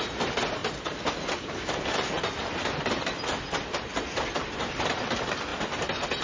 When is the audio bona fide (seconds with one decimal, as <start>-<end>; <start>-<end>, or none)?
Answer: 0.0-6.2